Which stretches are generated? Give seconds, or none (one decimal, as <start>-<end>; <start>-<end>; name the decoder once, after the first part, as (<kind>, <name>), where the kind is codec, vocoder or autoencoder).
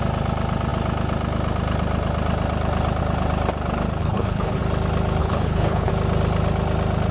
4.0-4.6 (codec, HILCodec); 5.2-5.9